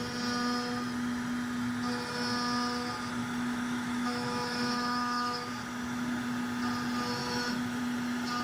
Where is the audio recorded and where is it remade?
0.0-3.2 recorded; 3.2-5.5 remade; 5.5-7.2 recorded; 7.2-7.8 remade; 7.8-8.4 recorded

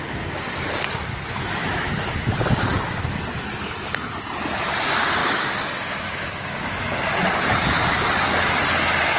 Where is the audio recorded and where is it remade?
0.0-1.6 recorded; 1.6-2.2 remade; 2.2-5.2 recorded; 5.2-7.0 remade; 7.0-9.2 recorded

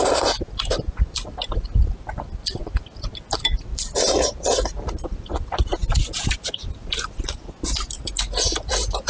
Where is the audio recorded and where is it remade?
0.0-9.1 recorded

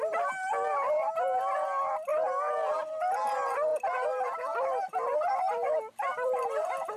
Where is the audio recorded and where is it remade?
0.0-7.0 recorded

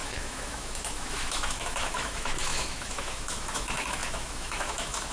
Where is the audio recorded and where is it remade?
0.0-5.1 remade